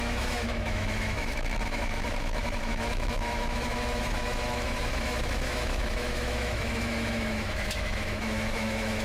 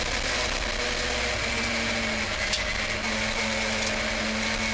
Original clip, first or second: second